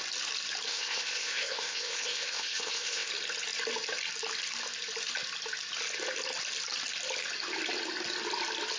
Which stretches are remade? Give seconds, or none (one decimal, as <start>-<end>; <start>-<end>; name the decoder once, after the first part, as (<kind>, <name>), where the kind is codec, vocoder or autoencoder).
0.7-3.1 (codec, ZipCodec)